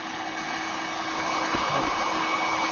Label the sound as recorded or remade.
remade